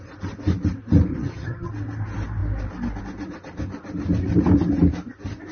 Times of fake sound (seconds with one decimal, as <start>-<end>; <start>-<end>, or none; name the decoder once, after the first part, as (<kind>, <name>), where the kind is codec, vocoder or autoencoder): 1.1-1.7 (vocoder, HiFi-GAN)